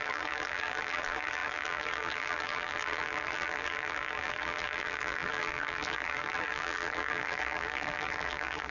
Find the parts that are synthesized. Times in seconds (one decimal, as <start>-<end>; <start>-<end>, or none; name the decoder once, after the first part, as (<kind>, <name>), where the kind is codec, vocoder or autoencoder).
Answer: 0.0-8.7 (vocoder, BigVGAN v2)

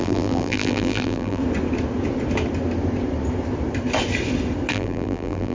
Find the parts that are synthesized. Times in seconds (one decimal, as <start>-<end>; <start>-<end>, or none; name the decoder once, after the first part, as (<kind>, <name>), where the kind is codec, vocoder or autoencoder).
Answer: 0.0-1.4 (vocoder, BigVGAN v2); 4.7-5.5

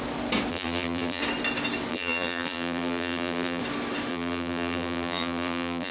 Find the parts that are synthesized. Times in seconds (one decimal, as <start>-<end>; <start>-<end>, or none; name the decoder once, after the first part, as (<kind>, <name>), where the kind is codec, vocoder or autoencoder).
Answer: 0.5-1.2 (vocoder, BigVGAN v2); 1.9-3.6; 4.1-5.9

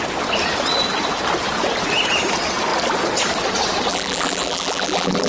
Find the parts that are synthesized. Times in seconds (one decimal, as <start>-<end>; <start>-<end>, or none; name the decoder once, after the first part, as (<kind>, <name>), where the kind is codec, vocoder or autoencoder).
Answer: 3.9-5.3 (vocoder, BigVGAN v2)